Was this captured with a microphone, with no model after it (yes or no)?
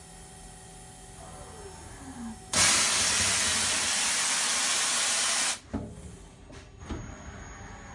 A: yes